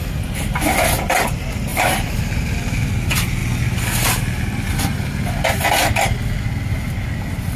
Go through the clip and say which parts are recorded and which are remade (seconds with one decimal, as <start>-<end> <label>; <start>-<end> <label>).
0.0-3.4 recorded; 3.4-4.7 remade; 4.7-7.6 recorded